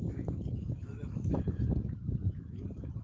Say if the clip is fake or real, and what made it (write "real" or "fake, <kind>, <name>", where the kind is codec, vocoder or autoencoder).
fake, autoencoder, DAC-VAE